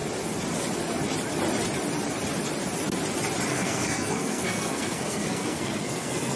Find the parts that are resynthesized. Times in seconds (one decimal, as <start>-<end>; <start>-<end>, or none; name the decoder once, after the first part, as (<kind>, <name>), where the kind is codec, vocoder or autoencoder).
3.5-6.4 (codec, SNAC)